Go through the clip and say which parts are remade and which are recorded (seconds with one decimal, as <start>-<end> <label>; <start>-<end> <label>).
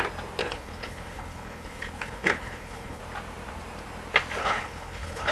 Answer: 0.0-0.4 recorded; 0.4-3.0 remade; 3.0-4.4 recorded; 4.4-5.3 remade